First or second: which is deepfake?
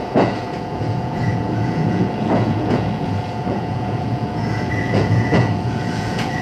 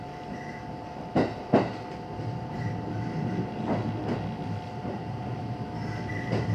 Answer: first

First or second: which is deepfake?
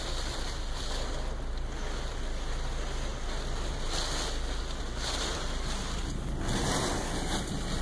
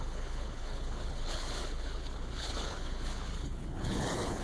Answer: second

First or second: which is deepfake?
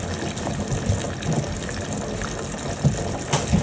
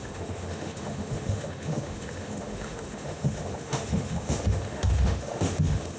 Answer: second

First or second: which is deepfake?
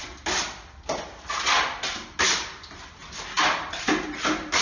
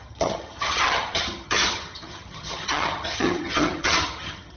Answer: second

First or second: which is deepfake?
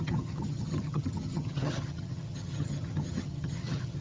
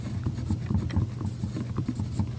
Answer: first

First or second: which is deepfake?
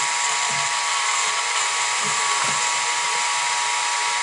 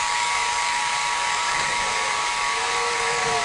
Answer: second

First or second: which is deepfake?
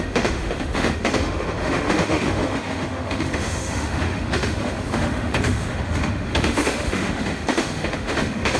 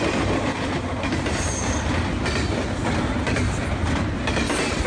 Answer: first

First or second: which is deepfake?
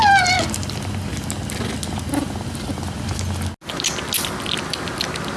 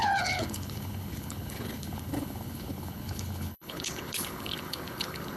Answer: second